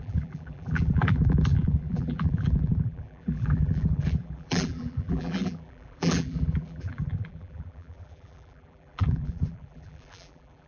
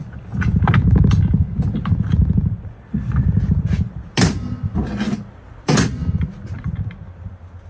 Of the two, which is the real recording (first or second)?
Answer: second